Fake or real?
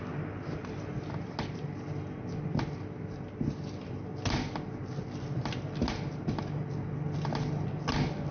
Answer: real